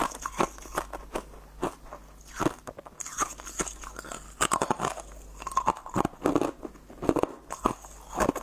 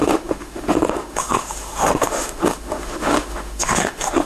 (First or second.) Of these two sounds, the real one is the first